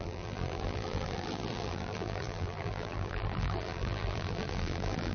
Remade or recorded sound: remade